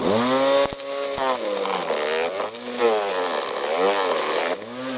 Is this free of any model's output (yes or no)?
yes